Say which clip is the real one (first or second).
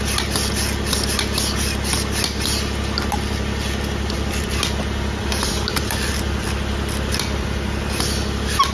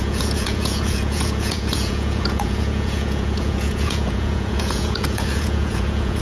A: first